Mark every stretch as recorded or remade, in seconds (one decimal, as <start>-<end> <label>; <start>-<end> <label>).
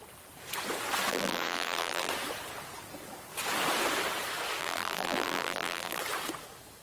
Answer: 0.0-1.1 recorded; 1.1-2.1 remade; 2.1-4.6 recorded; 4.6-6.0 remade; 6.0-6.8 recorded